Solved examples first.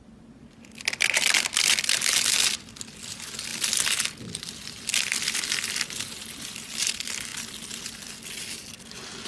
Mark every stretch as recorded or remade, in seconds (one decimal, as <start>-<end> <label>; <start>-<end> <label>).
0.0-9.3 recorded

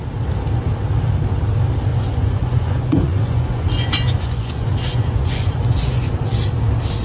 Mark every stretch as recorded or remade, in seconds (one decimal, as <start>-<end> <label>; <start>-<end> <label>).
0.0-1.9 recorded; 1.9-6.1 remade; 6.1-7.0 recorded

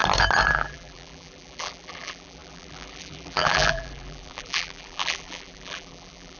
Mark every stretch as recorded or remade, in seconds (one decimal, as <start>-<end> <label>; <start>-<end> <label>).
0.0-0.5 recorded; 0.5-6.4 remade

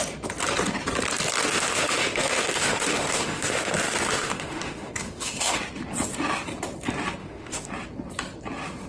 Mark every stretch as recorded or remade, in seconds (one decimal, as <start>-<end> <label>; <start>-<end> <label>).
0.0-1.4 recorded; 1.4-5.6 remade; 5.6-7.2 recorded; 7.2-7.7 remade; 7.7-8.9 recorded